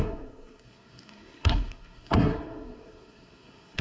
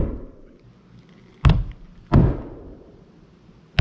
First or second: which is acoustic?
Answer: second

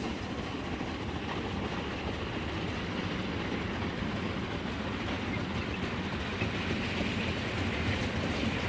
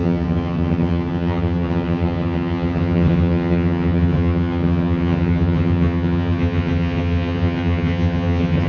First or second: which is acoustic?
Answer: first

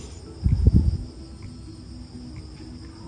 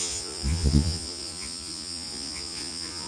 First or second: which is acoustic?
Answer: first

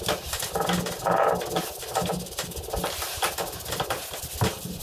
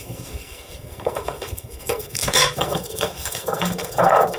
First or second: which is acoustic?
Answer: first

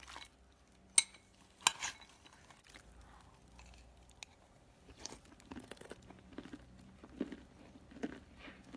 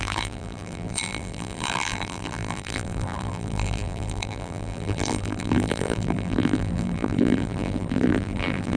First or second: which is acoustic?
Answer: first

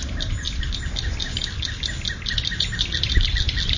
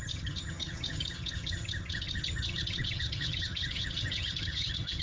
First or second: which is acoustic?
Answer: first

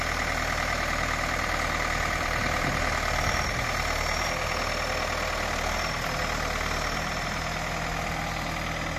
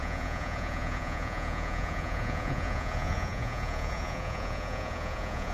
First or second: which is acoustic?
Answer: first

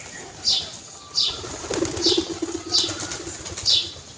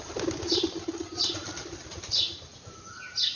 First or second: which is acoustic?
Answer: first